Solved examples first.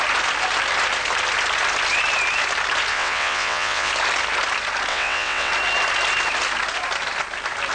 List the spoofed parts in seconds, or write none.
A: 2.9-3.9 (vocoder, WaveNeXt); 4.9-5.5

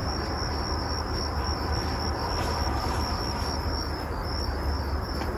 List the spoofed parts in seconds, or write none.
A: none

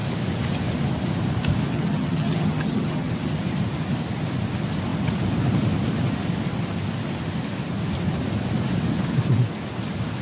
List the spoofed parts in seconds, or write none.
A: 1.7-3.1 (vocoder, HiFi-GAN)